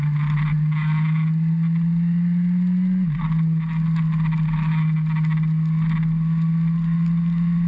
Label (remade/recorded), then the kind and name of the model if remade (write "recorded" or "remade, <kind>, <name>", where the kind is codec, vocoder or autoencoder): recorded